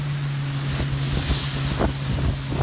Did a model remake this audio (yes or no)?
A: no